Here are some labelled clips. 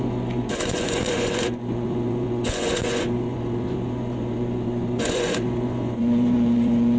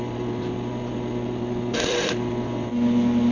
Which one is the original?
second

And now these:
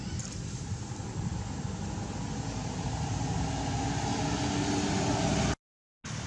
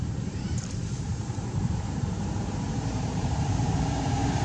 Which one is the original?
first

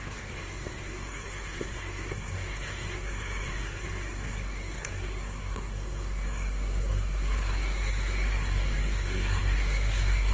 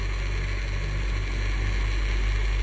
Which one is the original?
second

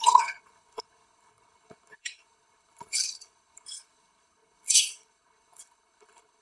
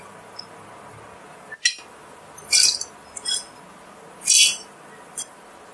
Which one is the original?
second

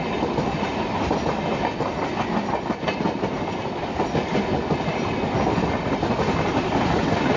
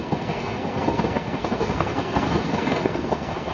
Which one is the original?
first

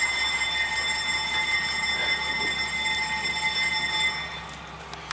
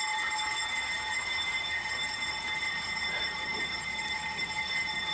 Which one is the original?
first